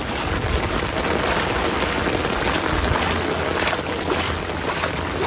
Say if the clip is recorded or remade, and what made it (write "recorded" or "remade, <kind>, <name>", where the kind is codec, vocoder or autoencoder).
recorded